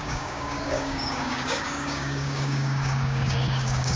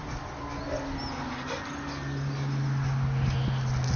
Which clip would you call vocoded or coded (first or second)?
first